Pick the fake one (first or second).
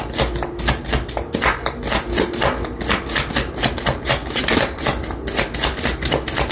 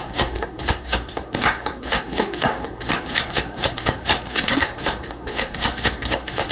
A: second